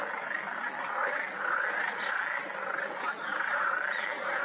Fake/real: real